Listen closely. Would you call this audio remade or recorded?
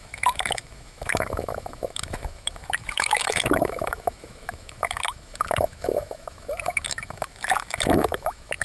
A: remade